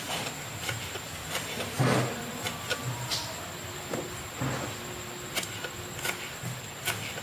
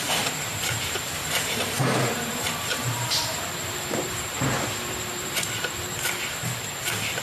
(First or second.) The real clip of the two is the first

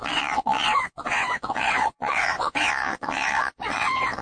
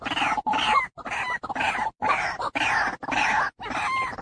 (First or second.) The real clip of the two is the second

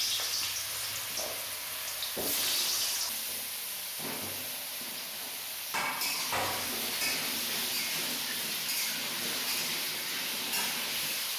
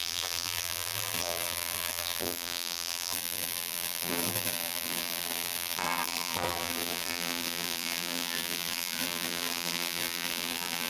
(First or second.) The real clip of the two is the first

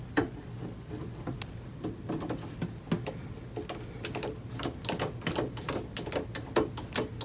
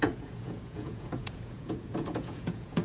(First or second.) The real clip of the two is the first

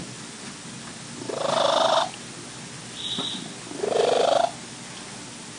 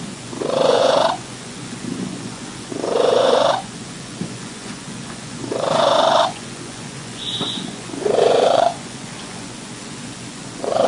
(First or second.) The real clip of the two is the first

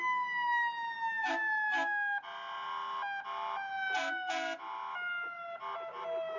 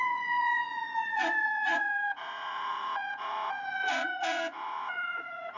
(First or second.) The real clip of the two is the first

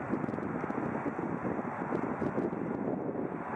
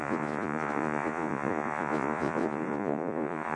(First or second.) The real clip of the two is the first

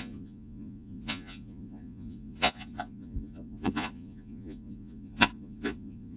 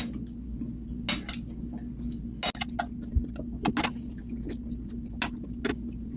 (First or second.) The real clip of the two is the second